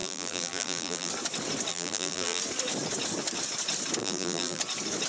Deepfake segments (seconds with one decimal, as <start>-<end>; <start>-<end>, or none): 0.0-1.1; 1.7-2.4; 4.0-4.6